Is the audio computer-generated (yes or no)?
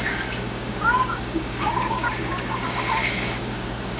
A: yes